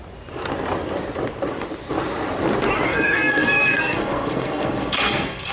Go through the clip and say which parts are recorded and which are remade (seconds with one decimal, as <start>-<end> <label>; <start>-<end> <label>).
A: 0.0-2.9 recorded; 2.9-5.5 remade